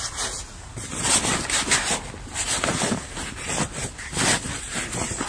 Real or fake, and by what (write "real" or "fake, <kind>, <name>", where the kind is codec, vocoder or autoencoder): real